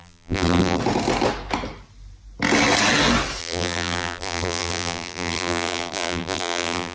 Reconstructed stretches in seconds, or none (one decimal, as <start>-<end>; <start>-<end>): 0.0-0.8; 3.4-6.9